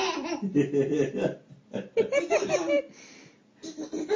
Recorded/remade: recorded